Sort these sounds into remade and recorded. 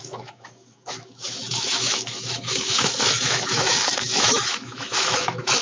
remade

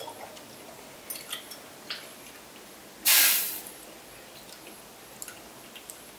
recorded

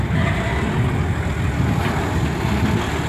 recorded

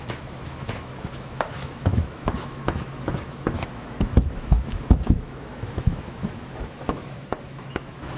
remade